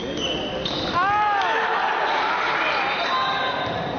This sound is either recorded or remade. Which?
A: recorded